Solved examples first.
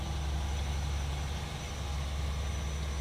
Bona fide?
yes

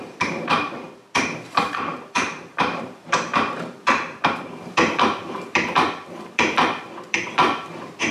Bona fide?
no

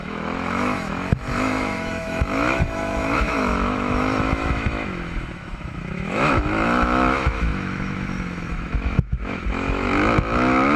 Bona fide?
no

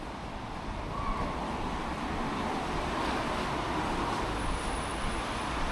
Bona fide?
yes